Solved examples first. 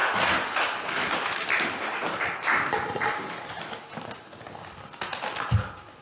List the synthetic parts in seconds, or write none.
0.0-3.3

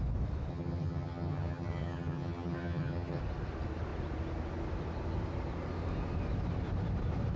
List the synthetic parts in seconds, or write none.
0.5-3.2

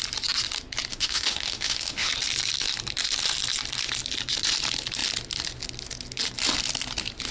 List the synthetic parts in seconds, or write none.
0.9-2.1

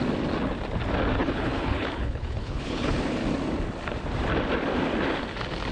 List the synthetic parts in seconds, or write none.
1.2-3.0

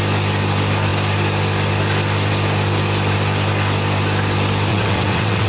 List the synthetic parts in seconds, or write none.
4.7-5.5

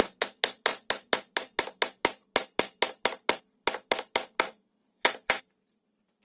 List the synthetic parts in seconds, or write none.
4.8-5.4

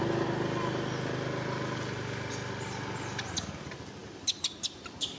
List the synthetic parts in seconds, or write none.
none